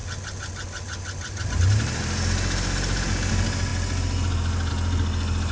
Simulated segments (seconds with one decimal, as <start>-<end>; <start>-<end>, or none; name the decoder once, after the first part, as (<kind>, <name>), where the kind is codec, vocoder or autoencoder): none